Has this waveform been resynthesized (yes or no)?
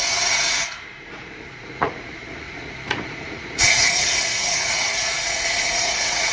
yes